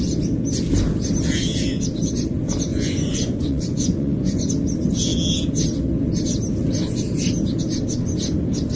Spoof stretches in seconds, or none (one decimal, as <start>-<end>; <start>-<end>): 2.7-4.5